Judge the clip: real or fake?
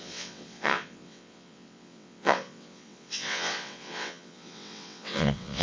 fake